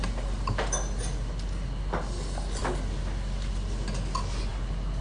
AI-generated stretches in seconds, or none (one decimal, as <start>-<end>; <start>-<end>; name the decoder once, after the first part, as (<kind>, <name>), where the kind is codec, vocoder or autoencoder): none